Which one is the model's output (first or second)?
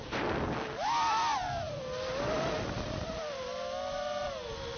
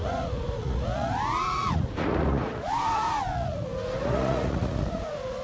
second